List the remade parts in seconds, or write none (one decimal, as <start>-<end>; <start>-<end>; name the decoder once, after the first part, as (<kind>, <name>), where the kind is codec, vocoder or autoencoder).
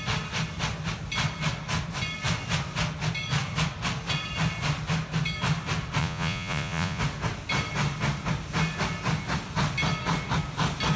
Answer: 6.0-7.0 (vocoder, Vocos)